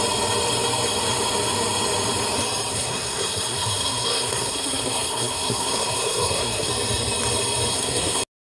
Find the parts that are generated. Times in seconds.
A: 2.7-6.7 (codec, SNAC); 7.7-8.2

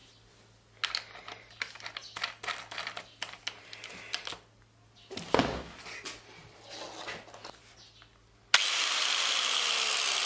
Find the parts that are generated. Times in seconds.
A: none

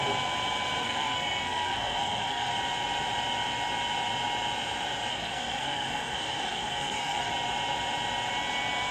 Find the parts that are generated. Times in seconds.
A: 0.8-2.5 (codec, SNAC); 5.1-7.3

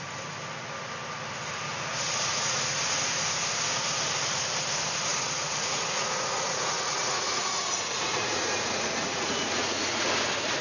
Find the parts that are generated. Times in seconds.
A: 1.9-2.8 (vocoder, Vocos); 5.1-10.1

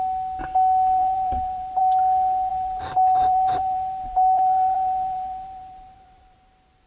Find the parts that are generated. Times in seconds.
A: 1.0-1.8 (vocoder, BigVGAN v2); 2.5-6.5